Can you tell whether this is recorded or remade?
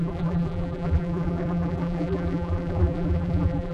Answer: remade